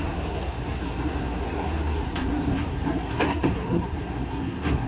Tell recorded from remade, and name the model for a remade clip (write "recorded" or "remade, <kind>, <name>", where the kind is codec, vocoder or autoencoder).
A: remade, codec, SNAC